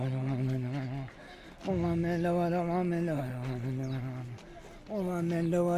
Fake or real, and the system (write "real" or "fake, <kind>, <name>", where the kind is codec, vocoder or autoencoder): real